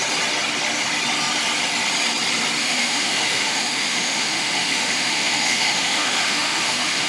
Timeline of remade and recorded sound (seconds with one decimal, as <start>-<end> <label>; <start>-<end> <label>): 0.0-2.6 recorded; 2.6-7.1 remade